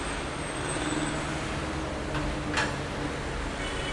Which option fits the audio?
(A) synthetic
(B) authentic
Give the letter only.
B